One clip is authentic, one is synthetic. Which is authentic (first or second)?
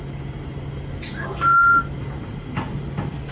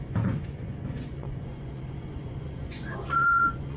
first